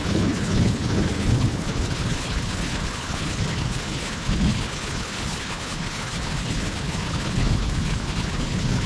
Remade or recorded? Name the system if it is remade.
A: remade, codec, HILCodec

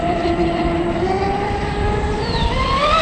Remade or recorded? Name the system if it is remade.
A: remade, vocoder, BigVGAN v2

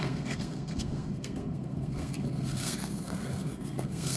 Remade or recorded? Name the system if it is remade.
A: remade, codec, SNAC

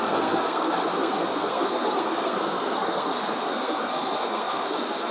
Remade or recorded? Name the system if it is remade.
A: remade, codec, SNAC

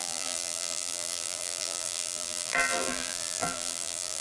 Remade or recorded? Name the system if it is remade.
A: remade, vocoder, BigVGAN v2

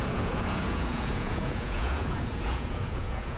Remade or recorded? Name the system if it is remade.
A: remade, vocoder, Vocos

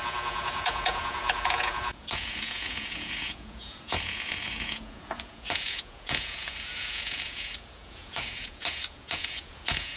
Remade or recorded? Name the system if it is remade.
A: remade, vocoder, Vocos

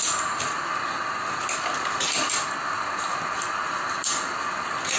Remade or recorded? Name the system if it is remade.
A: recorded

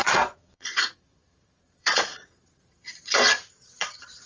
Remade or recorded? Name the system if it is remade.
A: remade, vocoder, Vocos